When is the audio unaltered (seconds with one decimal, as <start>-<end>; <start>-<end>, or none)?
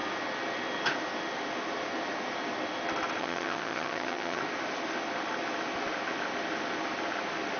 0.0-3.2; 4.4-7.6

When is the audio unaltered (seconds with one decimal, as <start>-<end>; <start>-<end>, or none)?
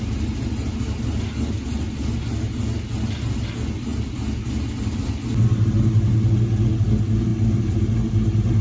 0.0-8.6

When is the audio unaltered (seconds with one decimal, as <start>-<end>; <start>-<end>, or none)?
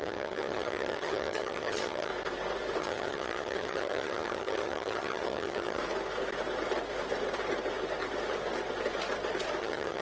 2.1-2.8; 5.8-9.6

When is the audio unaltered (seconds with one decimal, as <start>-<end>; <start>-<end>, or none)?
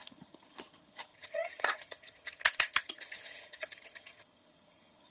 none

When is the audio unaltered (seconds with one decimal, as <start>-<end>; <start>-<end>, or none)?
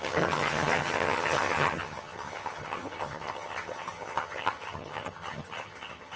none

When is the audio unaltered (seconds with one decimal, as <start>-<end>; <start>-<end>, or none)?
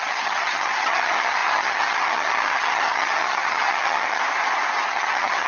4.2-4.9